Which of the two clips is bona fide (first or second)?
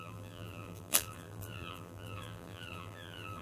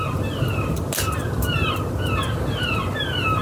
second